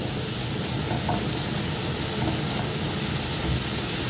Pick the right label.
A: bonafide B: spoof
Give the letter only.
A